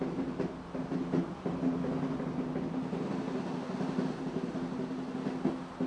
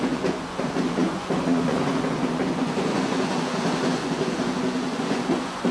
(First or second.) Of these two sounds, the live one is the first